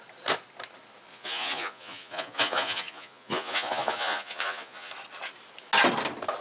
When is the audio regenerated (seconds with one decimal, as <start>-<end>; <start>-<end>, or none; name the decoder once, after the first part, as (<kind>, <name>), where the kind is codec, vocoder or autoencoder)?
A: 1.1-4.9 (vocoder, Vocos)